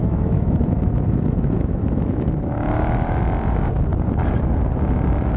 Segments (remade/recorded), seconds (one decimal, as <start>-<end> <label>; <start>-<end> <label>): 0.0-3.2 remade; 3.2-5.4 recorded